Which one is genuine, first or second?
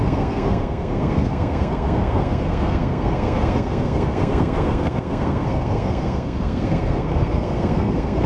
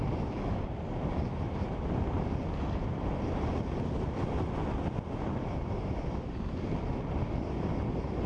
second